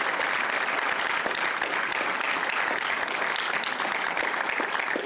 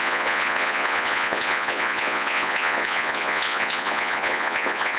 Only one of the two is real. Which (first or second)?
first